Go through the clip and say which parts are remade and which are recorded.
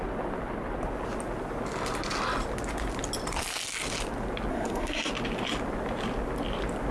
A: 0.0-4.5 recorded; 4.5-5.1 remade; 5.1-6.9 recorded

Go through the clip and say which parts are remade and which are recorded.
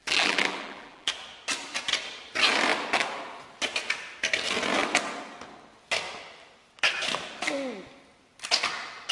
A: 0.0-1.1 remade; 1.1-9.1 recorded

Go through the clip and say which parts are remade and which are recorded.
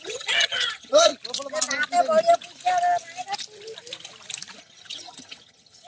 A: 0.0-1.1 remade; 1.1-4.6 recorded; 4.6-5.9 remade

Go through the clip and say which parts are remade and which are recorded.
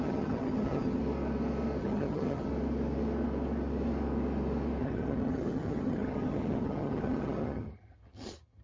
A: 0.0-1.0 remade; 1.0-1.8 recorded; 1.8-2.5 remade; 2.5-4.8 recorded; 4.8-8.6 remade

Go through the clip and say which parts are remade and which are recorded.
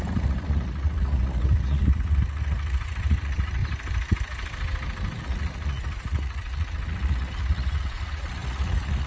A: 0.0-3.6 remade; 3.6-5.2 recorded; 5.2-9.1 remade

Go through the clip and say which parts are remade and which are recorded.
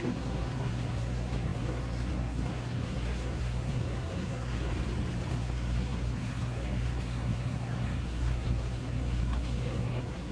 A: 0.0-4.7 remade; 4.7-5.3 recorded; 5.3-10.3 remade